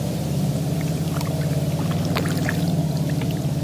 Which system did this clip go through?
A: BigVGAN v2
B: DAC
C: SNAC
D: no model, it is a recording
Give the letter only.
A